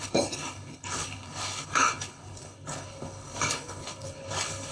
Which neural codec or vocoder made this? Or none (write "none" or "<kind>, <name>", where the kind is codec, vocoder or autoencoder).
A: codec, HILCodec